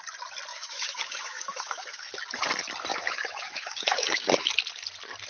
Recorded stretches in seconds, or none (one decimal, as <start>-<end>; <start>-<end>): 0.0-0.5; 2.1-2.9; 4.5-5.3